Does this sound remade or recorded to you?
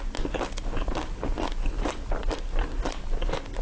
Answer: recorded